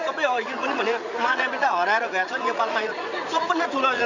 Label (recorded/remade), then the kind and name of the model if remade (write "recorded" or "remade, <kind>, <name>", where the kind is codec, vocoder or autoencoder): remade, vocoder, Vocos